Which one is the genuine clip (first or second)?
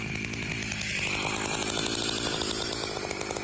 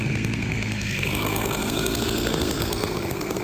first